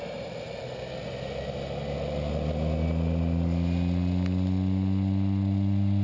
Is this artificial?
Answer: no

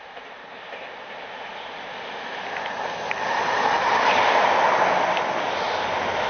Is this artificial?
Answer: no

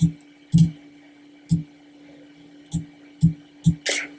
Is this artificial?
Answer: no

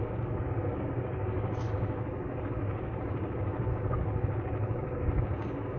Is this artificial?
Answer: yes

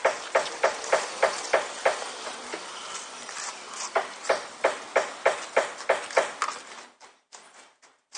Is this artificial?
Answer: no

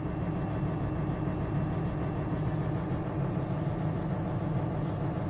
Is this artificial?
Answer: no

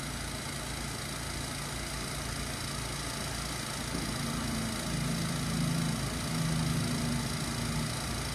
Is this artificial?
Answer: no